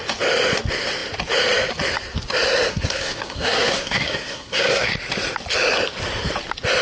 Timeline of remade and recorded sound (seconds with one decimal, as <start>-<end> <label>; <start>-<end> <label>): 0.0-2.7 recorded; 2.7-4.9 remade; 4.9-6.8 recorded

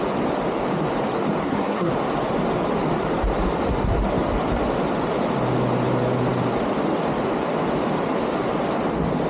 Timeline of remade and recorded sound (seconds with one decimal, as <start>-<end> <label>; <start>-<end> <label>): 0.0-1.4 recorded; 1.4-1.9 remade; 1.9-9.3 recorded

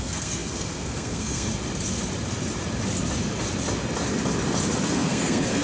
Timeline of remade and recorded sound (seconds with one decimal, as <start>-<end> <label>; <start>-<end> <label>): 0.0-1.5 remade; 1.5-4.9 recorded; 4.9-5.6 remade